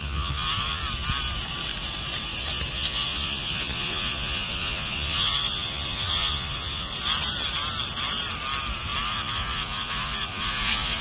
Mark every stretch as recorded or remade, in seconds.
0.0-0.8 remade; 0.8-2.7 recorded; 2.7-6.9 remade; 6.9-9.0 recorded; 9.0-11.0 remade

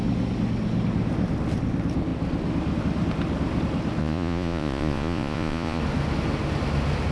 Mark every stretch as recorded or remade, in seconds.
0.0-4.0 recorded; 4.0-5.8 remade; 5.8-7.1 recorded

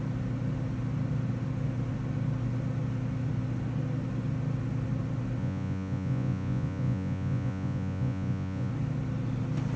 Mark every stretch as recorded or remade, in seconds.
0.0-5.4 recorded; 5.4-8.7 remade; 8.7-9.8 recorded

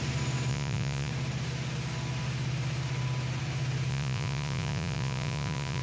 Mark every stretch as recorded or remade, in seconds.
0.0-0.5 recorded; 0.5-1.1 remade; 1.1-3.9 recorded; 3.9-5.8 remade

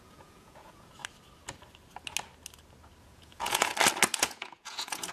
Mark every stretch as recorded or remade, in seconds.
0.0-1.0 remade; 1.0-3.0 recorded; 3.0-3.7 remade; 3.7-4.2 recorded; 4.2-5.1 remade